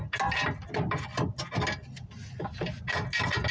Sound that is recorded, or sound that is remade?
recorded